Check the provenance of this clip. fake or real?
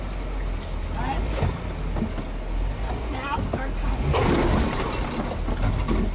real